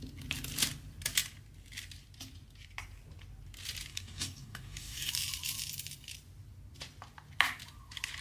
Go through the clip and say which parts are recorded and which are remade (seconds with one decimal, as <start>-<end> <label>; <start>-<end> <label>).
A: 0.0-3.9 recorded; 3.9-5.1 remade; 5.1-8.2 recorded